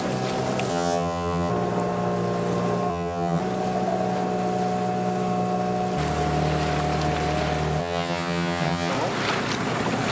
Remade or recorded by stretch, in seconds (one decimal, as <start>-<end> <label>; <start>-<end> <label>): 0.0-0.7 recorded; 0.7-1.5 remade; 1.5-2.9 recorded; 2.9-3.4 remade; 3.4-7.8 recorded; 7.8-8.9 remade; 8.9-10.1 recorded